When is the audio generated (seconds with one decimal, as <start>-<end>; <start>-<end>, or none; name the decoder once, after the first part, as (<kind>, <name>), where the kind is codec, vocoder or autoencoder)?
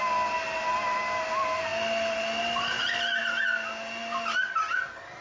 none